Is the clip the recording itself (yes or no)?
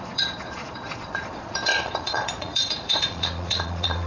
no